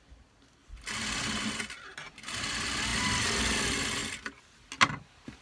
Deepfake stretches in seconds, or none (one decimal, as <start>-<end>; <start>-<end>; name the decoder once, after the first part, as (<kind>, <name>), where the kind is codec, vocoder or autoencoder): none